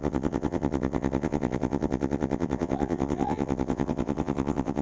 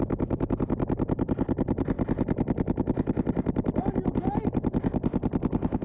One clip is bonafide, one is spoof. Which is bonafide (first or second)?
second